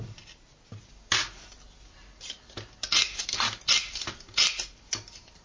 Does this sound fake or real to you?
real